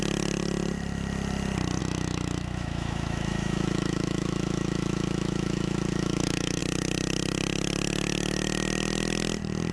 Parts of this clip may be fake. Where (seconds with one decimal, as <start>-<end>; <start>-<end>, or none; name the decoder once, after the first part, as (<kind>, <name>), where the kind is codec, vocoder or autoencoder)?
1.8-6.6 (autoencoder, DAC-VAE)